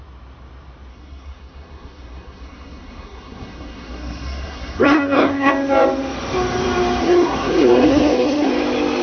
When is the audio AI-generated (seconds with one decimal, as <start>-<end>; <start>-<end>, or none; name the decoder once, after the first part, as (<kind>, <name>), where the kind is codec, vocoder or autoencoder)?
0.9-5.5 (codec, SNAC); 7.0-8.5